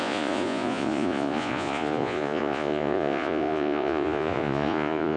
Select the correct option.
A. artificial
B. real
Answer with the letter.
A